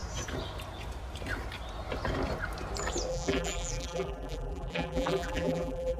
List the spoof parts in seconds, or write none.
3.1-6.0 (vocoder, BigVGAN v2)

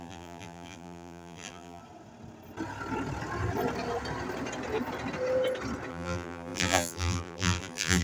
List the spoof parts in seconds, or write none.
0.0-1.8 (vocoder, BigVGAN v2); 5.9-8.0